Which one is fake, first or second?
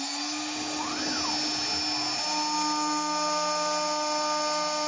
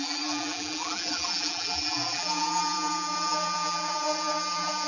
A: second